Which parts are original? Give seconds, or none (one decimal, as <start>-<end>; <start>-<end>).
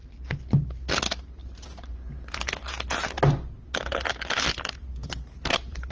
0.0-1.4; 2.5-5.0